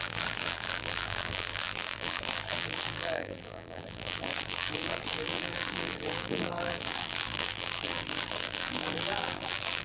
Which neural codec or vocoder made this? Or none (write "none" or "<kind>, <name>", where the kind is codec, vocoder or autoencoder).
vocoder, BigVGAN v2